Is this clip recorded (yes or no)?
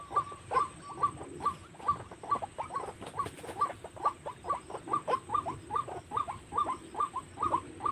yes